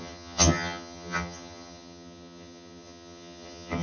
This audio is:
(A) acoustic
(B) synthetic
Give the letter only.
B